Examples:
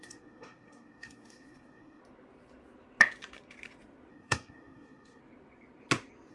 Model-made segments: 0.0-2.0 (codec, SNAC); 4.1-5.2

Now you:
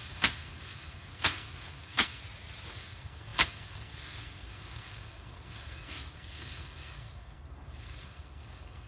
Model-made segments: 0.0-2.2 (codec, SNAC); 2.7-8.9

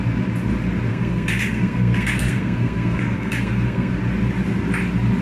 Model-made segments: 0.9-4.0 (codec, SNAC)